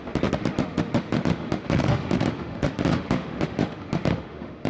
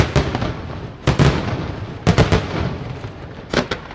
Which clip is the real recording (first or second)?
second